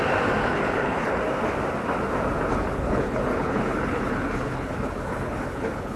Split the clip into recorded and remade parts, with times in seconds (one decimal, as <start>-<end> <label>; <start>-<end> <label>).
0.0-0.4 recorded; 0.4-1.2 remade; 1.2-2.5 recorded; 2.5-6.0 remade